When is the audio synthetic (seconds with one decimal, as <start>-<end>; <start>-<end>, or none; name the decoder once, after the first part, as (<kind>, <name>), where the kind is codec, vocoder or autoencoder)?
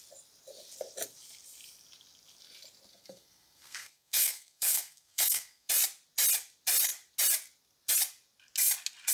2.9-5.7 (codec, SNAC)